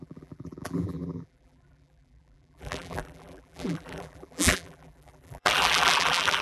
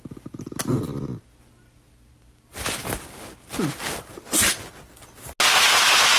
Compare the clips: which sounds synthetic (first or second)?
first